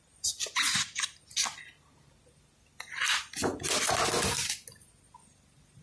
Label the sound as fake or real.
real